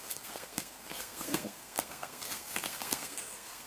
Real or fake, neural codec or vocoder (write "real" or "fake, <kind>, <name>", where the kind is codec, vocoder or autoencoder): fake, codec, SNAC